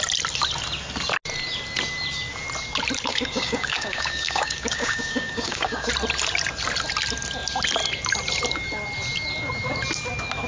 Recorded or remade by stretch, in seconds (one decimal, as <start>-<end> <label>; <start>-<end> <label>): 0.0-3.1 recorded; 3.1-5.9 remade; 5.9-10.5 recorded

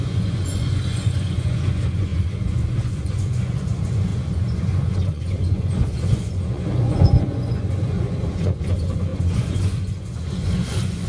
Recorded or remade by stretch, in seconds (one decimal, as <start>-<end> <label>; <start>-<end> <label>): 0.0-11.1 remade